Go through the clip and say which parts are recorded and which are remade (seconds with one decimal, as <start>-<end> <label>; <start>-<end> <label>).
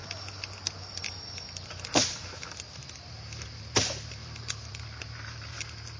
0.0-4.2 recorded; 4.2-4.8 remade; 4.8-6.0 recorded